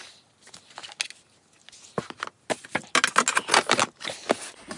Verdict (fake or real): real